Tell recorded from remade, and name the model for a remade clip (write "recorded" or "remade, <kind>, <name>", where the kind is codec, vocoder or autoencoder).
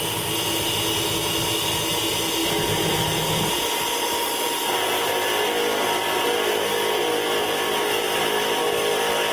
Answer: recorded